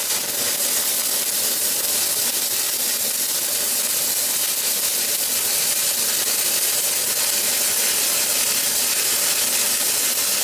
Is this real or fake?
real